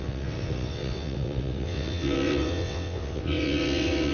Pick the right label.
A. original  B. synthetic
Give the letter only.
B